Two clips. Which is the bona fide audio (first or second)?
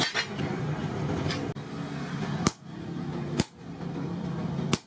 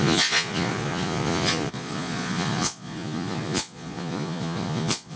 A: first